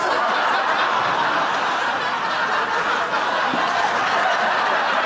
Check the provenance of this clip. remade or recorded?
recorded